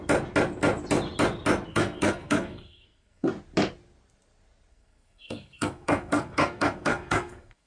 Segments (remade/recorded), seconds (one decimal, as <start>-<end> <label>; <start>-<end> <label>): 0.0-1.7 recorded; 1.7-3.3 remade; 3.3-4.7 recorded; 4.7-7.7 remade